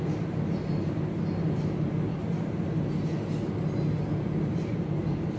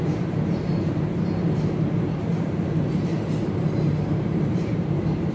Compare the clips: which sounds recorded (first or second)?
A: first